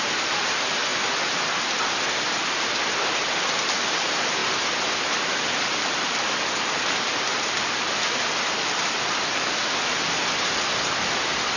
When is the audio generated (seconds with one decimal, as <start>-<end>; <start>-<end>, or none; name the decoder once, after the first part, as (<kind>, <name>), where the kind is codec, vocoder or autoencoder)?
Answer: none